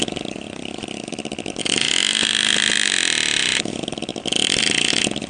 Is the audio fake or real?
real